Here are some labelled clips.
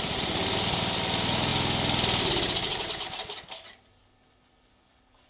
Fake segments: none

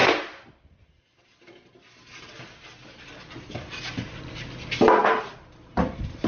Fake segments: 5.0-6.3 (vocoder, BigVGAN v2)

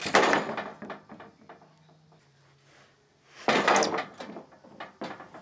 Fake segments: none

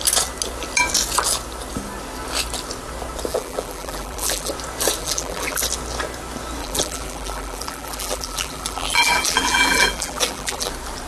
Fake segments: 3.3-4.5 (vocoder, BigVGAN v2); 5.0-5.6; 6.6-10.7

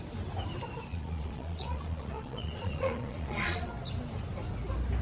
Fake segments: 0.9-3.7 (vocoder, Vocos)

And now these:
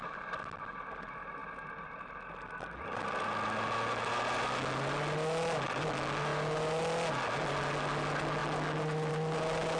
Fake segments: none